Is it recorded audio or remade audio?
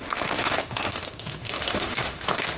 remade